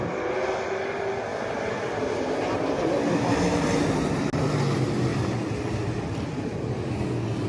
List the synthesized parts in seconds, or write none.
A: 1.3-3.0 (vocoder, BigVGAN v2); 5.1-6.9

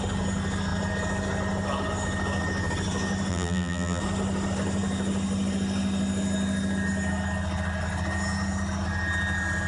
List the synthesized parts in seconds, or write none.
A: 3.3-4.0 (vocoder, BigVGAN v2)

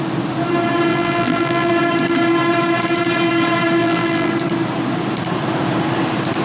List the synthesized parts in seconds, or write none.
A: 0.9-1.7 (vocoder, BigVGAN v2); 3.8-4.3